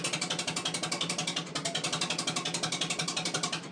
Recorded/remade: recorded